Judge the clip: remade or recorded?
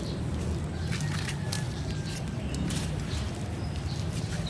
recorded